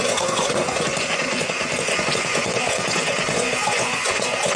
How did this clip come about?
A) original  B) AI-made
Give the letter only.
B